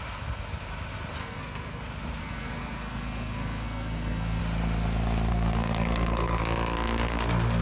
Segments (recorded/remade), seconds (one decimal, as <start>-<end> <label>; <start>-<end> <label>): 0.0-1.2 recorded; 1.2-1.8 remade; 1.8-2.2 recorded; 2.2-4.4 remade; 4.4-5.3 recorded; 5.3-6.4 remade; 6.4-7.6 recorded